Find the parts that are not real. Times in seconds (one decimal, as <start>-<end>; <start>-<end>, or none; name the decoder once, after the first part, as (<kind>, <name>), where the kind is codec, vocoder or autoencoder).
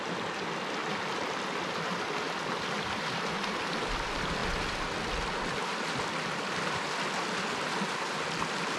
none